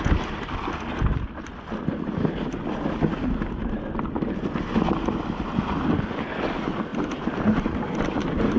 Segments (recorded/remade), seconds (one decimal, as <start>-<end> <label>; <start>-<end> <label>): 0.0-8.6 recorded